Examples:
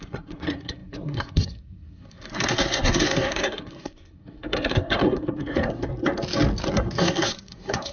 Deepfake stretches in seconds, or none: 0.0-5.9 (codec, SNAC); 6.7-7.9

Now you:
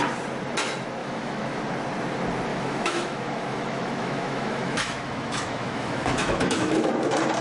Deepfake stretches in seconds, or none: 1.0-1.6 (autoencoder, DAC-VAE); 2.5-6.9